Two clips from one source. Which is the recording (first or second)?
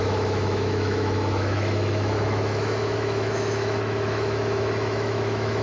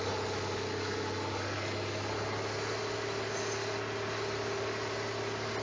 second